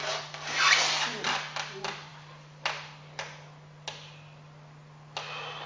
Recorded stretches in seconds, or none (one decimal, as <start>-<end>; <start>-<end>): 0.0-5.7